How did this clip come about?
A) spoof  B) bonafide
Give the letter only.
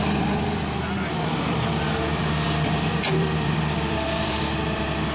A